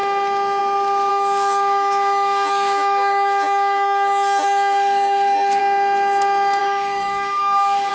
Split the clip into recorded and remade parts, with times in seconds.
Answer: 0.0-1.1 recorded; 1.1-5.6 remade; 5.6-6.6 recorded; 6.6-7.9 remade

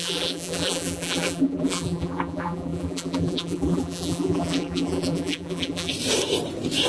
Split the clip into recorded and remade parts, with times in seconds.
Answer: 0.0-5.9 remade; 5.9-6.9 recorded

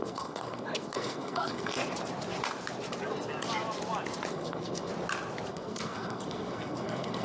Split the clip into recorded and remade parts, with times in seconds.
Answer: 0.0-1.8 remade; 1.8-4.3 recorded; 4.3-4.9 remade; 4.9-5.5 recorded; 5.5-7.2 remade

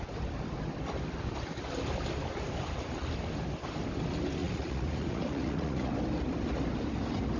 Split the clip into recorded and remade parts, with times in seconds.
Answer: 0.0-4.4 recorded; 4.4-5.9 remade; 5.9-7.4 recorded

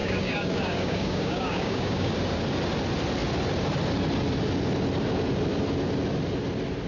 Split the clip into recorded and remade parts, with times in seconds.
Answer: 0.0-2.1 remade; 2.1-6.9 recorded

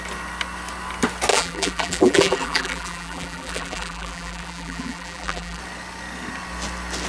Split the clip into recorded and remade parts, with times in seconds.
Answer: 0.0-1.3 recorded; 1.3-5.6 remade; 5.6-7.1 recorded